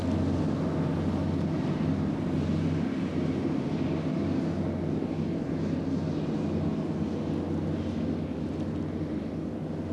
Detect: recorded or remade recorded